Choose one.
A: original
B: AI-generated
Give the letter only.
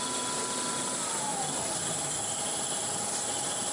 A